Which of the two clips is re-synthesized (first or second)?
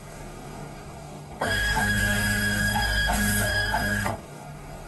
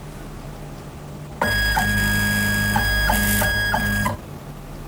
first